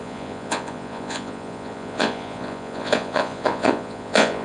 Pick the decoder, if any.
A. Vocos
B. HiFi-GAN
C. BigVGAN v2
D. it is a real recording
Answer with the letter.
A